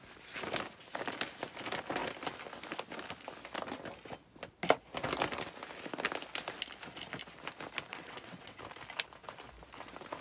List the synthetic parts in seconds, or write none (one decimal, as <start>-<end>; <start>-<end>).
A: 7.9-8.6